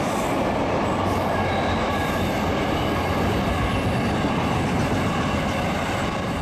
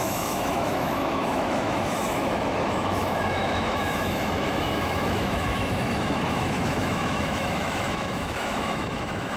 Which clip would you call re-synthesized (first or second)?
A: second